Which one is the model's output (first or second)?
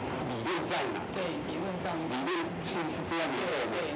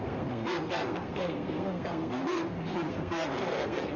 second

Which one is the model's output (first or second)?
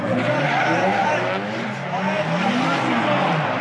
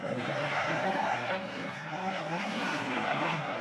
second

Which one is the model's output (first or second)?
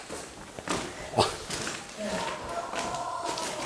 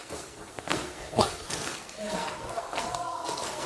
second